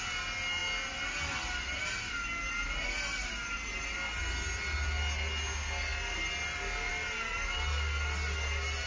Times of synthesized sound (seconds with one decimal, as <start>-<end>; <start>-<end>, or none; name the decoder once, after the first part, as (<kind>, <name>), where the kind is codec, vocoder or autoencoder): none